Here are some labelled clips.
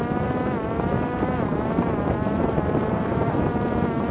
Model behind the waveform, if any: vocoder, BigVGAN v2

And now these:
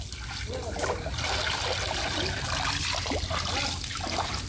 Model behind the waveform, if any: none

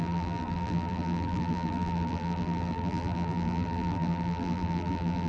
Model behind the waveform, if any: vocoder, BigVGAN v2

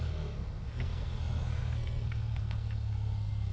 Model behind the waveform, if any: codec, SNAC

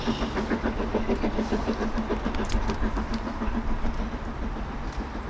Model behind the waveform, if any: none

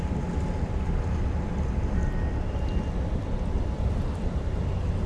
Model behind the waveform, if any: none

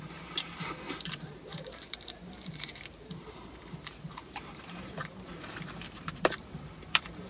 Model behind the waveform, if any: vocoder, BigVGAN v2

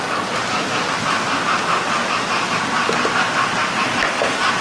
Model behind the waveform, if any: none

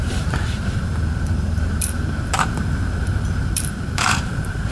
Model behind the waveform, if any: vocoder, BigVGAN v2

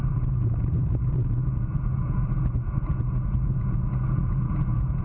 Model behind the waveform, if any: vocoder, Vocos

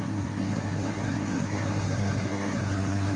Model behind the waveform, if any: codec, SNAC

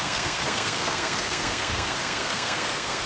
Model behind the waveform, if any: codec, SNAC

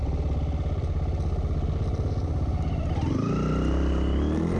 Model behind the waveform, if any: none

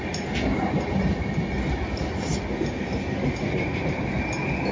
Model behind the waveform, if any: none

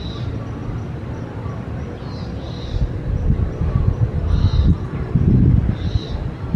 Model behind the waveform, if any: none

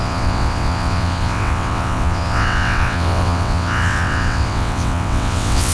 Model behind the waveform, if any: vocoder, WaveNeXt